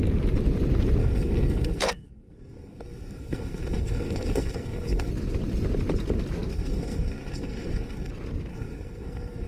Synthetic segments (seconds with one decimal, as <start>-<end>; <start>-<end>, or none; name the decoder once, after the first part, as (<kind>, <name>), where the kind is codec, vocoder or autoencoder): 1.0-5.1 (codec, SNAC); 6.5-8.1; 8.5-9.5